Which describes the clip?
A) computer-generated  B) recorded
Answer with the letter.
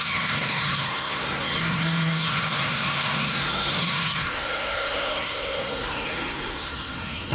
A